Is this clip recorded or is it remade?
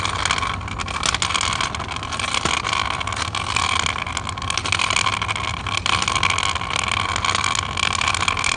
recorded